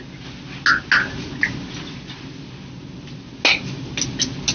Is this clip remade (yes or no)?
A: no